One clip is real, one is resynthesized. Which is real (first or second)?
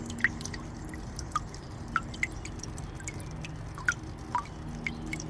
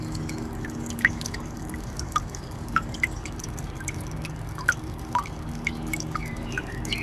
first